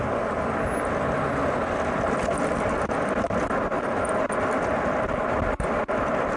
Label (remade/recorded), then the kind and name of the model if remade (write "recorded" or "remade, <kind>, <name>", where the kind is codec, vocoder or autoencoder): recorded